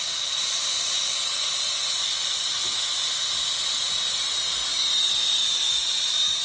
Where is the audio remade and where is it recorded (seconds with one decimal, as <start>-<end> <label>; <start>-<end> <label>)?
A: 0.0-6.4 recorded